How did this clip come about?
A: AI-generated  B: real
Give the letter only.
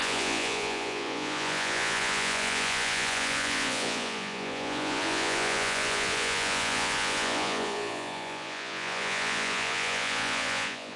A